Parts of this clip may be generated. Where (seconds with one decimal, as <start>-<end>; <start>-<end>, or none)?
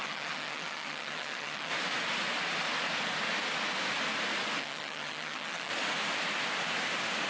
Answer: 0.0-1.7; 4.6-5.7